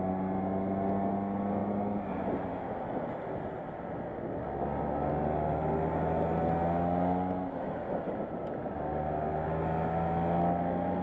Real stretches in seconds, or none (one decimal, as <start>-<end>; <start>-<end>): 0.0-11.0